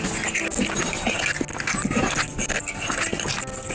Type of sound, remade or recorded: recorded